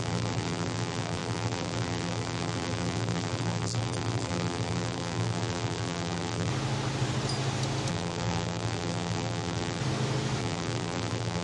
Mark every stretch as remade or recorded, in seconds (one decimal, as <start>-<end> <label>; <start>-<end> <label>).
0.0-6.5 remade; 6.5-7.9 recorded; 7.9-9.8 remade; 9.8-10.4 recorded; 10.4-11.4 remade